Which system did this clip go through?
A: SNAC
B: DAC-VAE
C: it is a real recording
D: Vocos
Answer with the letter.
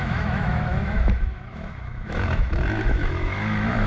B